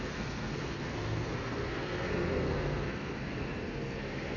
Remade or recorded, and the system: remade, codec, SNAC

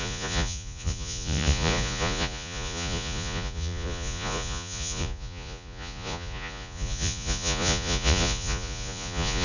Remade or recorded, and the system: remade, vocoder, Vocos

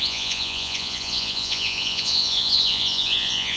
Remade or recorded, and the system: remade, vocoder, Vocos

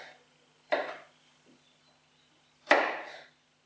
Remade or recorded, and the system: recorded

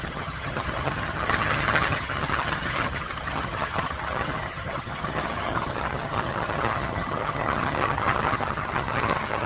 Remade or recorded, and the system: remade, vocoder, HiFi-GAN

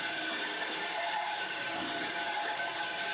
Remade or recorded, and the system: remade, codec, DAC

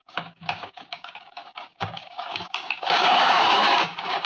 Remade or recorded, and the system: remade, codec, DAC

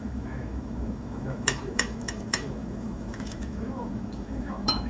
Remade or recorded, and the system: remade, autoencoder, DAC-VAE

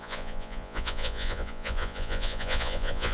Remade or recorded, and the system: remade, vocoder, Vocos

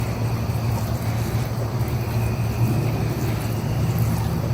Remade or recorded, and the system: recorded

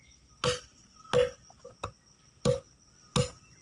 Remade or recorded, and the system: recorded